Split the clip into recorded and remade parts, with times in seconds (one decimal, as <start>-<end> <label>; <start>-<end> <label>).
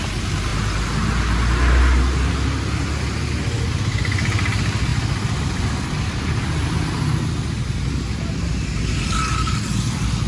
0.0-10.3 recorded